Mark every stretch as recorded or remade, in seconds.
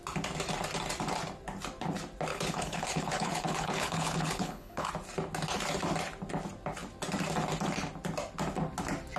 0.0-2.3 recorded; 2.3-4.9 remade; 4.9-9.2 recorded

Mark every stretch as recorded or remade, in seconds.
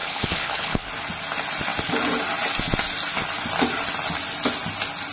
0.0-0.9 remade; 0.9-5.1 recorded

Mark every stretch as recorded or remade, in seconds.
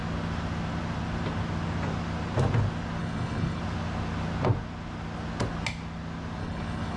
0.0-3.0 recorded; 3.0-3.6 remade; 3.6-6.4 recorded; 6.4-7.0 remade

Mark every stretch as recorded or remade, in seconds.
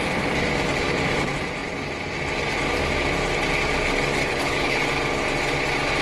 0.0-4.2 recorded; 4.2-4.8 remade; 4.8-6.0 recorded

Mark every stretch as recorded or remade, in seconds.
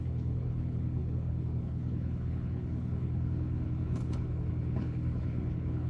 0.0-5.9 remade